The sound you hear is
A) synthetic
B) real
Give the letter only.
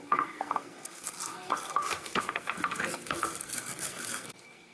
A